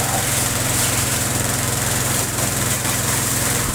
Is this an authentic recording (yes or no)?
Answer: no